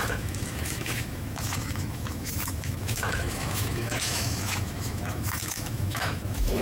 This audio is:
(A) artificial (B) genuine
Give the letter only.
A